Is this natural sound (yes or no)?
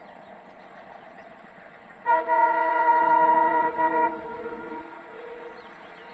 no